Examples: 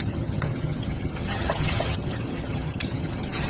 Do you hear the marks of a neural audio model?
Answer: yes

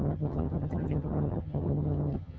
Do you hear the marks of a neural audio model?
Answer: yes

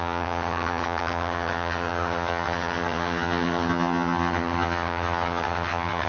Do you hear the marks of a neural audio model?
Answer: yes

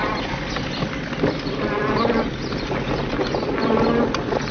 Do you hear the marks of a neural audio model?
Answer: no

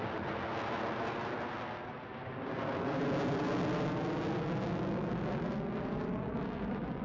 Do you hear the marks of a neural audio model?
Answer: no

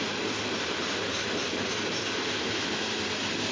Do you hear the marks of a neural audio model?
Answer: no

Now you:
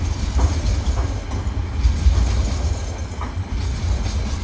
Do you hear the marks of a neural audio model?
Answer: no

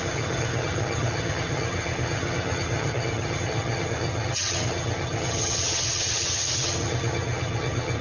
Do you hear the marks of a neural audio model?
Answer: yes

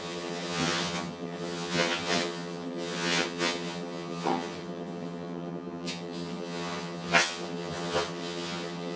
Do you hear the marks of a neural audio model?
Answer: yes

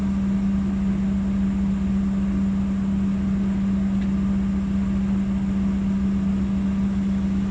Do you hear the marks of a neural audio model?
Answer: no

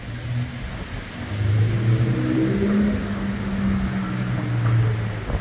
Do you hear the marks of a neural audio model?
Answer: no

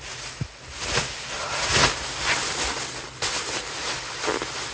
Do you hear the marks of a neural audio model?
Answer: no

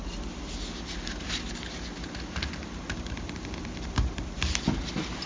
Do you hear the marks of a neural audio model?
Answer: no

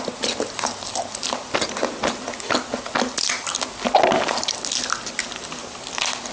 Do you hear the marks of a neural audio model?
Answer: no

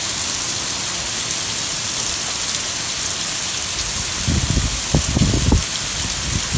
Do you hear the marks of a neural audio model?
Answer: no